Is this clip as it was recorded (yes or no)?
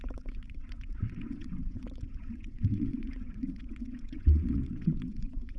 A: no